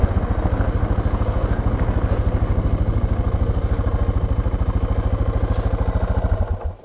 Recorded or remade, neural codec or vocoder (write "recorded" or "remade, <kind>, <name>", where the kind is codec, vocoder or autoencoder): recorded